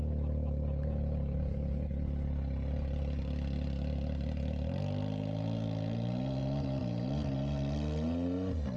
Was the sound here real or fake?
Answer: real